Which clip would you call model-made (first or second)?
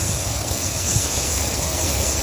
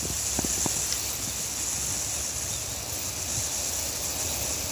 first